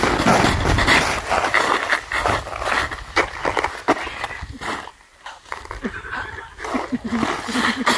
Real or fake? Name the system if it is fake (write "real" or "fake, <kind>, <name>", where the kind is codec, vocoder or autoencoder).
real